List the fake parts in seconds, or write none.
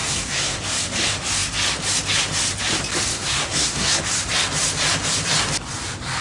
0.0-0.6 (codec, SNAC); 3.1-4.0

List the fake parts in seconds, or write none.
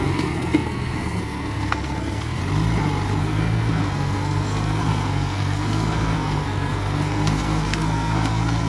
0.0-2.4 (codec, SNAC); 3.2-8.7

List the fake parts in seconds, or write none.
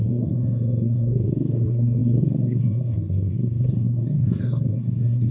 0.0-5.3 (codec, SNAC)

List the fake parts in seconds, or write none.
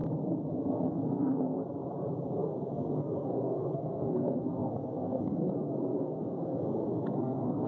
0.5-1.6 (codec, SNAC); 2.4-7.7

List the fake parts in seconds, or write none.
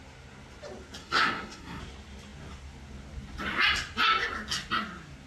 1.0-1.8 (codec, SNAC)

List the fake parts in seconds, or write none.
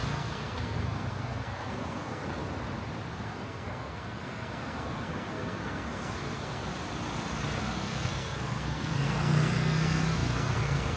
0.0-2.4 (codec, SNAC); 3.1-6.7; 7.6-11.0